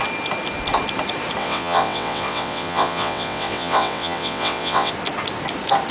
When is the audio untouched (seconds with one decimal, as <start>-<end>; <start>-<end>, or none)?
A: 0.0-1.4; 4.9-5.9